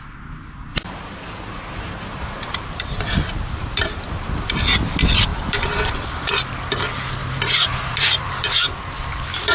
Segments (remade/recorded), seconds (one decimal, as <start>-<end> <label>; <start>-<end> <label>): 0.0-0.7 recorded; 0.7-4.5 remade; 4.5-5.3 recorded; 5.3-6.3 remade; 6.3-7.2 recorded; 7.2-8.7 remade; 8.7-9.5 recorded